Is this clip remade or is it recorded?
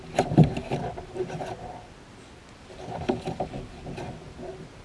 recorded